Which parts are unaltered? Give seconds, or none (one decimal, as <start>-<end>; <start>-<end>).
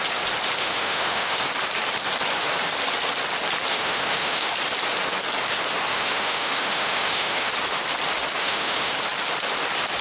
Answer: 0.0-0.6; 1.4-3.7; 4.5-5.9; 7.5-8.4; 8.9-10.0